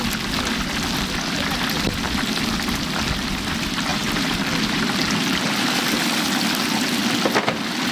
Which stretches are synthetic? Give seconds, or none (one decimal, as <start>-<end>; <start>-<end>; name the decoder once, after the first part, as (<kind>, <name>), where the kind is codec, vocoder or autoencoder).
3.9-4.8 (vocoder, BigVGAN v2)